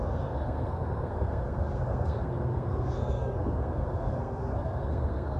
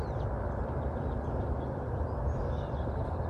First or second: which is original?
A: second